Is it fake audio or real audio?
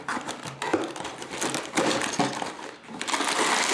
real